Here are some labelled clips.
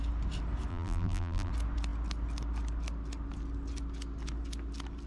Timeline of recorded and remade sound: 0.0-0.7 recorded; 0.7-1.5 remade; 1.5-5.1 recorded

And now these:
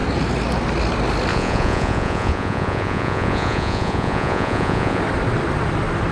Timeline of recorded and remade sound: 0.0-1.3 recorded; 1.3-5.0 remade; 5.0-6.1 recorded

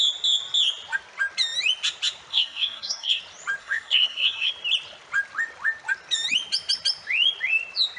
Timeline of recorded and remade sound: 0.0-2.3 recorded; 2.3-3.2 remade; 3.2-3.6 recorded; 3.6-4.5 remade; 4.5-8.0 recorded